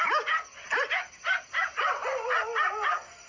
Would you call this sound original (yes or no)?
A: yes